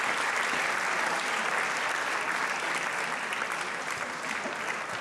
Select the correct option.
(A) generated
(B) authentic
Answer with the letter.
B